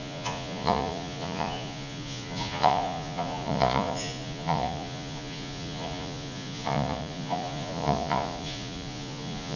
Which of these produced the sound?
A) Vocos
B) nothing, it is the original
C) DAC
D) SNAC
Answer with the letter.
A